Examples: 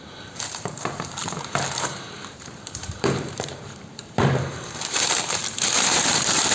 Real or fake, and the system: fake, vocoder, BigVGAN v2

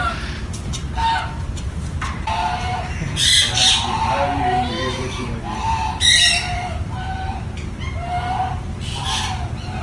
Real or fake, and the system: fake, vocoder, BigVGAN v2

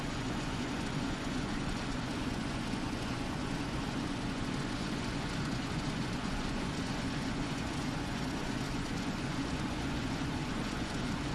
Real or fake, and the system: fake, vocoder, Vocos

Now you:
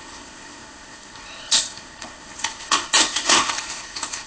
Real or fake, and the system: fake, codec, ZipCodec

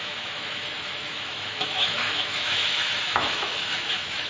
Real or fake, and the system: fake, autoencoder, DAC-VAE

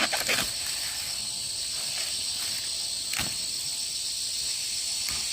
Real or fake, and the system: real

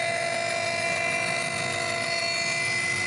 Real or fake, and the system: real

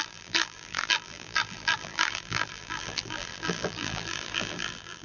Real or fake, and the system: fake, vocoder, BigVGAN v2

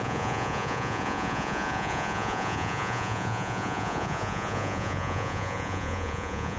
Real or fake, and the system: fake, vocoder, Vocos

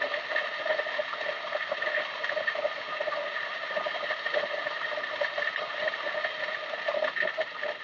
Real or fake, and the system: real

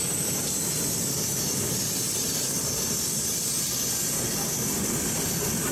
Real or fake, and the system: real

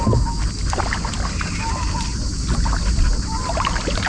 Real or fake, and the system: real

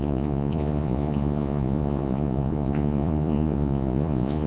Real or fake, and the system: fake, vocoder, Vocos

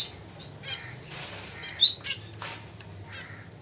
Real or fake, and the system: real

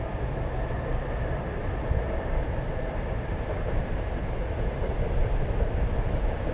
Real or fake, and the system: real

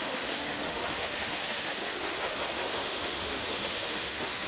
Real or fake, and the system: fake, autoencoder, DAC-VAE